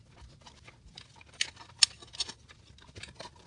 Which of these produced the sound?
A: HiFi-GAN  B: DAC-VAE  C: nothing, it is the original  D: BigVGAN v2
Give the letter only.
C